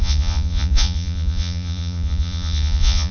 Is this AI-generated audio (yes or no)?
yes